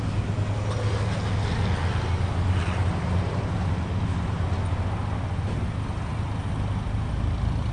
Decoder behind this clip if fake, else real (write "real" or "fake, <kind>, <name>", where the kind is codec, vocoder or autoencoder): real